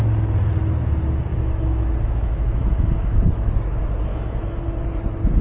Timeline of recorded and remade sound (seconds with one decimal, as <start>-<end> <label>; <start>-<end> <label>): 0.0-1.3 recorded; 1.3-3.3 remade; 3.3-4.1 recorded; 4.1-4.6 remade; 4.6-5.4 recorded